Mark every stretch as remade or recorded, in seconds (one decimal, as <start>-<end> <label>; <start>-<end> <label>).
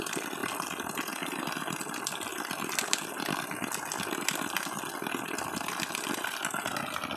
0.0-7.2 recorded